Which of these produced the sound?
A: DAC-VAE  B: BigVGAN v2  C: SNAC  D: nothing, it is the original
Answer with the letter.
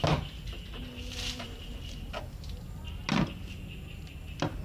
D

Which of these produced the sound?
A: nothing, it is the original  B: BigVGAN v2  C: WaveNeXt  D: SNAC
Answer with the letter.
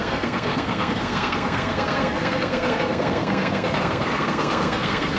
D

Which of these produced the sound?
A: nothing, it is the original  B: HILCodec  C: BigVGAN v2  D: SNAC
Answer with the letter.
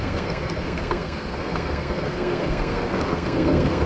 D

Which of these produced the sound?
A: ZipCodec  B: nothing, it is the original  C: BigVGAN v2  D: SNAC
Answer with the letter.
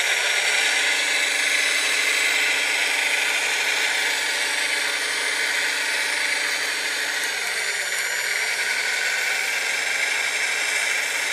B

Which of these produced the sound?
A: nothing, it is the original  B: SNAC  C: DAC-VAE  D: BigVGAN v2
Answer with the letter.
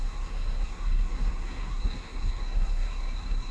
B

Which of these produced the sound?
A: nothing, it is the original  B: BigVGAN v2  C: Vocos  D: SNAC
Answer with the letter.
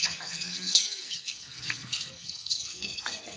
D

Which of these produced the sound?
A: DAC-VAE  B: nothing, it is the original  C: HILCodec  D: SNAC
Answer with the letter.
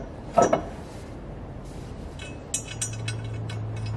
B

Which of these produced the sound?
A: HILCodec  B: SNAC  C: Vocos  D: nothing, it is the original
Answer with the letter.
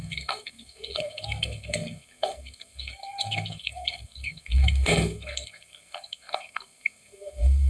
B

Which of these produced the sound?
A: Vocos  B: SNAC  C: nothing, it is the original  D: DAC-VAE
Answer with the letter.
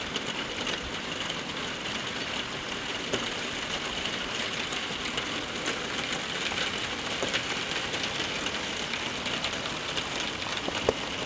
C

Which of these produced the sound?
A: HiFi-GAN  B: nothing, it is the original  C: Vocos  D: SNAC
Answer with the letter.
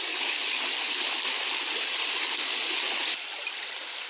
B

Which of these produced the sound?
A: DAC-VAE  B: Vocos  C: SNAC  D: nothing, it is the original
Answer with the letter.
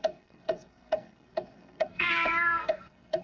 C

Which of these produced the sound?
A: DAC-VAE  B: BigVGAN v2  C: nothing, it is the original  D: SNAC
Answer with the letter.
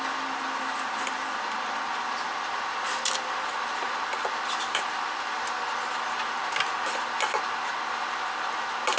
C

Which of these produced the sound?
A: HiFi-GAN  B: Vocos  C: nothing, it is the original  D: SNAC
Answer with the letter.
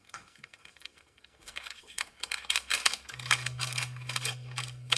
D